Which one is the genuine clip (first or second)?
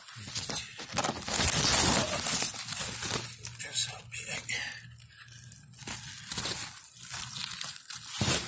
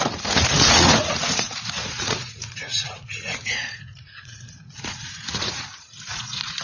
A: first